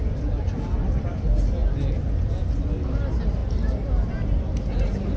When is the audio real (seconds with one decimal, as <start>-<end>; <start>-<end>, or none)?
0.0-3.4; 4.1-5.2